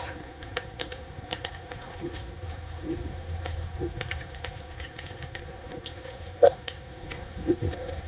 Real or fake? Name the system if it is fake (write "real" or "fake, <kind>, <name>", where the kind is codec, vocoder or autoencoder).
fake, codec, SNAC